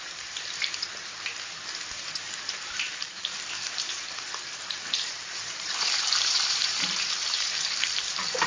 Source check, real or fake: fake